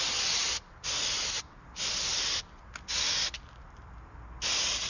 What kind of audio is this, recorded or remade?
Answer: recorded